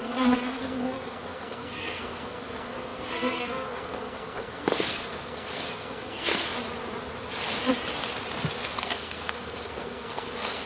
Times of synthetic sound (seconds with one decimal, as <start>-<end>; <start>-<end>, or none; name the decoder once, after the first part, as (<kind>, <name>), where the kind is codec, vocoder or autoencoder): 0.0-6.5 (codec, SNAC); 8.8-10.7